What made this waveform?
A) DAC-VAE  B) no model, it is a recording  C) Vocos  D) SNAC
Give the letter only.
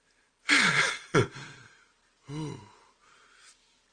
B